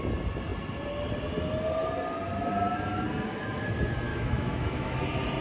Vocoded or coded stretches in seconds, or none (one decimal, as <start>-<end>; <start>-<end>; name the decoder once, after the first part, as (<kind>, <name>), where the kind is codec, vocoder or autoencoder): 4.1-5.0 (autoencoder, DAC-VAE)